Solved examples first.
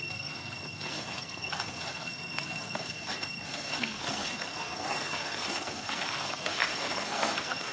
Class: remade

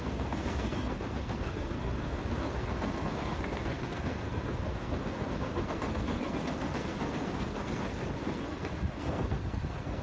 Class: remade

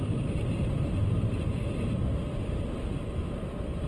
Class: recorded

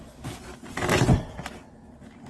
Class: recorded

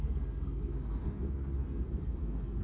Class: remade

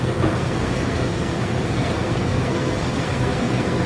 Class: remade